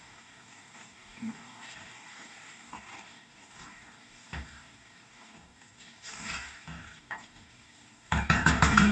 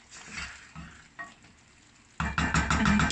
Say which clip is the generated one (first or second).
first